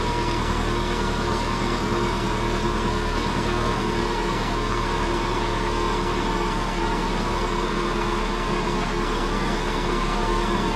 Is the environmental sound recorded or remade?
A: remade